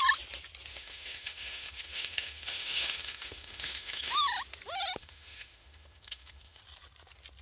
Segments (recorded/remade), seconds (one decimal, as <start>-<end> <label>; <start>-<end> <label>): 0.0-0.7 recorded; 0.7-4.1 remade; 4.1-5.0 recorded; 5.0-6.6 remade; 6.6-7.4 recorded